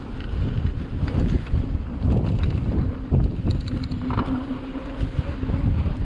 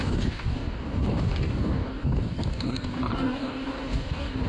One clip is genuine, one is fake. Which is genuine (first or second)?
first